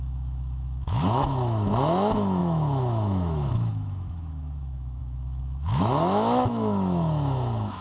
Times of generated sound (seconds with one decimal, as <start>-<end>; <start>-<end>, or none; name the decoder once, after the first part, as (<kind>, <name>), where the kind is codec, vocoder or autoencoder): 0.0-7.8 (autoencoder, DAC-VAE)